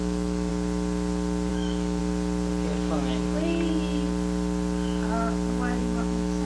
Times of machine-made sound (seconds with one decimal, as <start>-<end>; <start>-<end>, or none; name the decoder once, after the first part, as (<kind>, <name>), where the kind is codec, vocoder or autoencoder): 0.0-0.5 (autoencoder, DAC-VAE); 1.5-2.0; 5.8-6.4